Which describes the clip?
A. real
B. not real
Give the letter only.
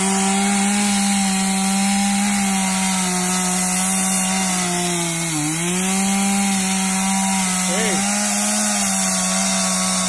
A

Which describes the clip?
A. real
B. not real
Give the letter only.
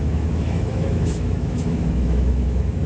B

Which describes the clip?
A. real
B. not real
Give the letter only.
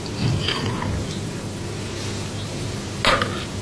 A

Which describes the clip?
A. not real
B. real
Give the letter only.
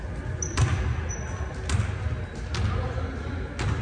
B